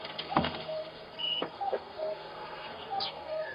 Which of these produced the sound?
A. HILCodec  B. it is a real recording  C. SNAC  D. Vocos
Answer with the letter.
C